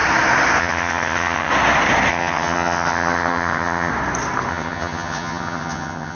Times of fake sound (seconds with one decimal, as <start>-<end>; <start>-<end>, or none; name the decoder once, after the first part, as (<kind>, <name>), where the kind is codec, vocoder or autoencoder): 0.6-1.5 (vocoder, HiFi-GAN); 2.1-3.9; 4.5-6.2